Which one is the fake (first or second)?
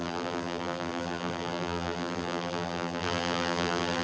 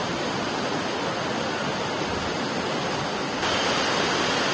first